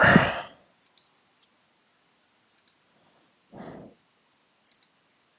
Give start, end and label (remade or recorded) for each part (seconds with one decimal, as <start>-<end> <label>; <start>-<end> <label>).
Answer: 0.0-5.4 recorded